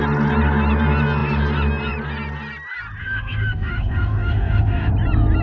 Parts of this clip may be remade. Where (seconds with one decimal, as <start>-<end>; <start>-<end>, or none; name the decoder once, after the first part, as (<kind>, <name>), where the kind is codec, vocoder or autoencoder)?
3.0-4.9 (autoencoder, DAC-VAE)